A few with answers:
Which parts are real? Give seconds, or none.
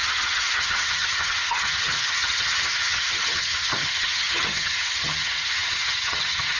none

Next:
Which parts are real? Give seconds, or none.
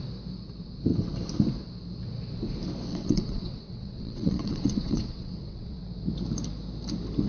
0.0-2.9; 5.8-7.3